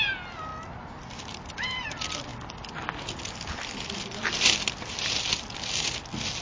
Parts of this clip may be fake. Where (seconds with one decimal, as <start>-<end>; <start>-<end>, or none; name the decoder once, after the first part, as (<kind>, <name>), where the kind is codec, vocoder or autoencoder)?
none